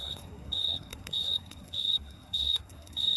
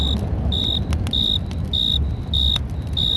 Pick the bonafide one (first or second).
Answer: second